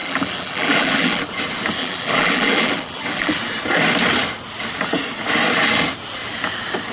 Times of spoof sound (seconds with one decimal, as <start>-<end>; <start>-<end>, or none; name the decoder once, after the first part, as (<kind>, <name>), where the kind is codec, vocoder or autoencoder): 0.0-1.3 (vocoder, BigVGAN v2); 1.8-3.4